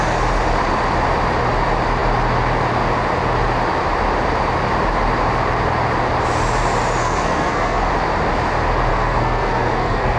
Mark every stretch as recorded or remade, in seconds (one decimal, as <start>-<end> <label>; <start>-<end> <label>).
0.0-7.0 recorded; 7.0-7.9 remade; 7.9-8.9 recorded; 8.9-10.2 remade